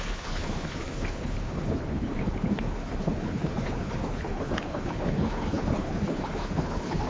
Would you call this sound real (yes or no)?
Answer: no